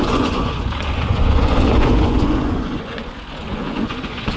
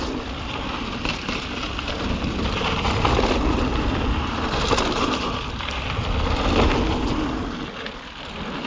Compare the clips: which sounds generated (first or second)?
first